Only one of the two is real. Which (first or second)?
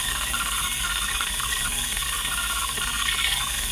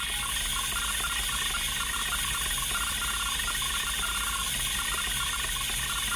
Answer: second